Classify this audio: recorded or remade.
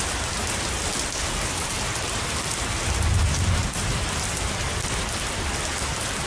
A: remade